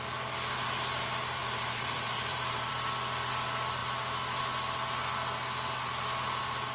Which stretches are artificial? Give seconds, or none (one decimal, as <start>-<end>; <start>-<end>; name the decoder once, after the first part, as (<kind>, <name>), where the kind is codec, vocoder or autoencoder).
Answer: 1.4-2.7 (vocoder, BigVGAN v2)